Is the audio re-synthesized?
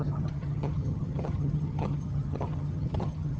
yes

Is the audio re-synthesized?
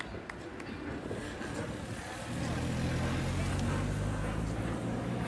no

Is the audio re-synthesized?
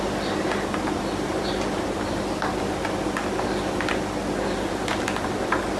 no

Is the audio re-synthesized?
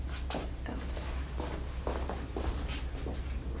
no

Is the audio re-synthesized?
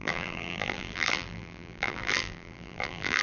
yes